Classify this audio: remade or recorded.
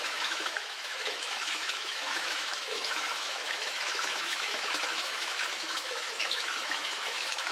remade